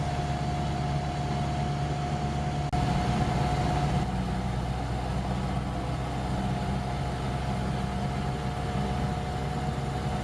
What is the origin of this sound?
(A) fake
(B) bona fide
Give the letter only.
B